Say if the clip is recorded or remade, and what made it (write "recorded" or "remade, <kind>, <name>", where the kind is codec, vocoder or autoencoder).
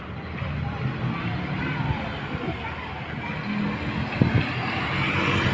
recorded